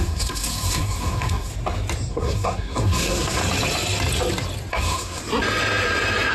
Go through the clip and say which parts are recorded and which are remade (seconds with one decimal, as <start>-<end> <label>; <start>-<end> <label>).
0.0-1.5 remade; 1.5-2.1 recorded; 2.1-3.4 remade; 3.4-4.7 recorded; 4.7-5.2 remade; 5.2-6.3 recorded